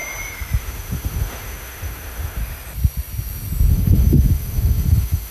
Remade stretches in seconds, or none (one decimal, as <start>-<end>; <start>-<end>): 0.6-2.4; 3.7-5.3